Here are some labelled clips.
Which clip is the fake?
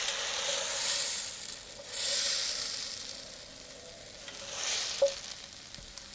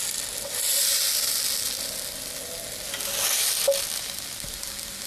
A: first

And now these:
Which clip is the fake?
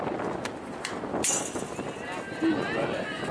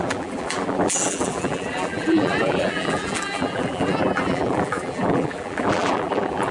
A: second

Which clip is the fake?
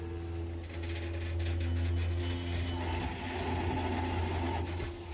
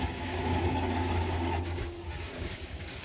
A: second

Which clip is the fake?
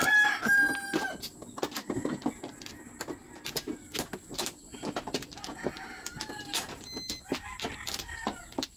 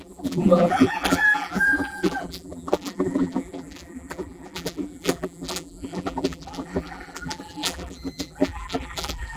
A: second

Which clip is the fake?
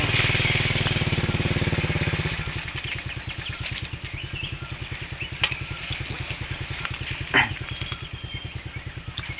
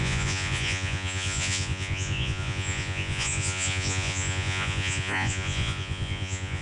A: second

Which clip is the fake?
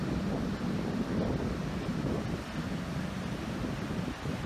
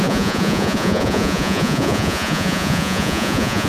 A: second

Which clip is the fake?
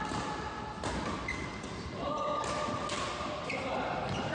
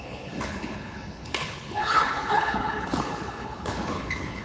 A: second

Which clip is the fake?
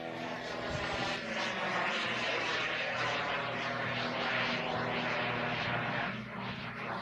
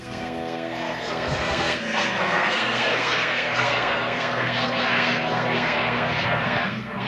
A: second